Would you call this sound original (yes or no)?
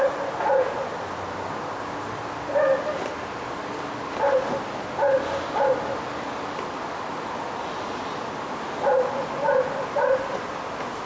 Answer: yes